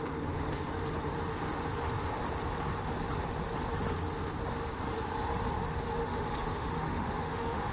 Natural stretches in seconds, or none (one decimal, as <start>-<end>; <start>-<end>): 0.0-6.0